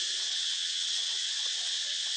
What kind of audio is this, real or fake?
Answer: fake